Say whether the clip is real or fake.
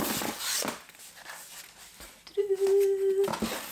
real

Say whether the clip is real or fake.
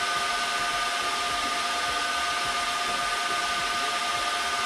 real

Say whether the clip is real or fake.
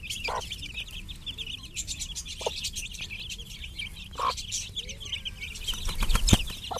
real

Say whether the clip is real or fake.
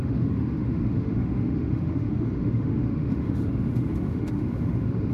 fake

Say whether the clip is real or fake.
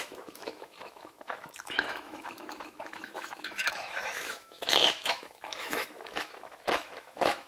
fake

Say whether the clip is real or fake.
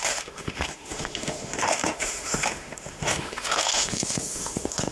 fake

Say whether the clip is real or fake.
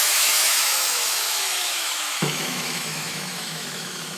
fake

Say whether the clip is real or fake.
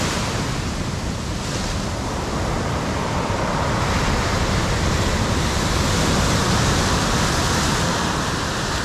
real